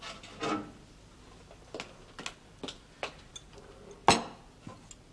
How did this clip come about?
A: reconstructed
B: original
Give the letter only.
B